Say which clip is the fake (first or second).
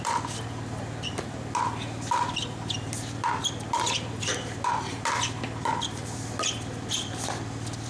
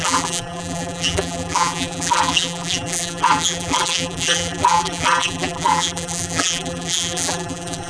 second